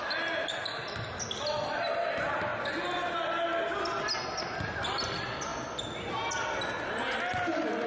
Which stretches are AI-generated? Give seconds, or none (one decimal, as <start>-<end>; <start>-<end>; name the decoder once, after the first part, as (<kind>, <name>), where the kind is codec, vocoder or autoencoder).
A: none